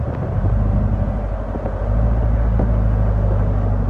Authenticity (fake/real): real